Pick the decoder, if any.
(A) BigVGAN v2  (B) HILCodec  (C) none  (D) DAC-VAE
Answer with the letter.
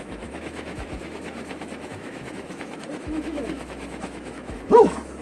D